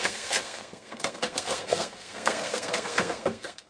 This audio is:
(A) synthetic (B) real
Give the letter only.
A